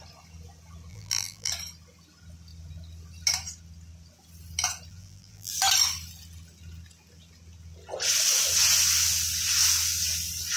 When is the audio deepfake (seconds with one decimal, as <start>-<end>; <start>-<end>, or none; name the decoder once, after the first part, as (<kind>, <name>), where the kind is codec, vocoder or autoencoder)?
0.9-1.5 (vocoder, BigVGAN v2); 4.9-5.5